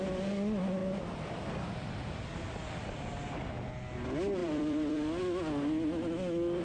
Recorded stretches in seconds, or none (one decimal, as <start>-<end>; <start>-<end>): 0.0-0.8; 1.8-4.4; 5.2-6.6